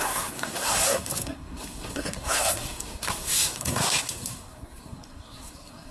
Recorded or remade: remade